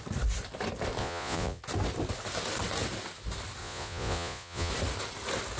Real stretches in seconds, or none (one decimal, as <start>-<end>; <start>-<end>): 0.0-1.0; 1.6-3.6; 4.7-5.6